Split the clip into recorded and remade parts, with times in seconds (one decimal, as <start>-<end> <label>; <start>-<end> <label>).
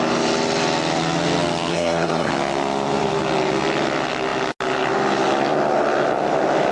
0.0-1.7 recorded; 1.7-2.3 remade; 2.3-6.7 recorded